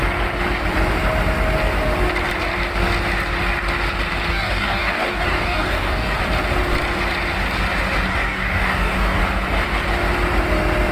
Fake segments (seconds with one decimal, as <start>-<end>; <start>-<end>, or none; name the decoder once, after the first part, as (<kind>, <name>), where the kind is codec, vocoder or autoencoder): 4.3-6.2 (codec, DAC); 8.1-9.2